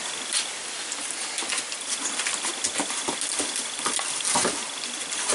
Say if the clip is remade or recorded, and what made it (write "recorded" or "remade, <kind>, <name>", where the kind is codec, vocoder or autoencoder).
recorded